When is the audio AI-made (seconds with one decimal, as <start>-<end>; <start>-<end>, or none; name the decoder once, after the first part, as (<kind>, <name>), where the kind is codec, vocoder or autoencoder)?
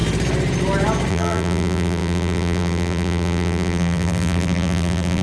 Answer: 1.1-5.2 (vocoder, BigVGAN v2)